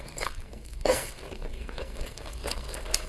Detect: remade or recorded remade